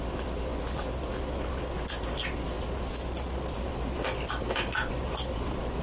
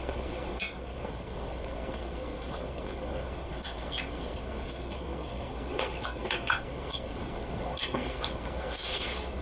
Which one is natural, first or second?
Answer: first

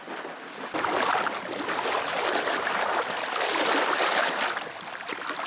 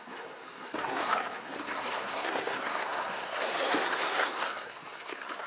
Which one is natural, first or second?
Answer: first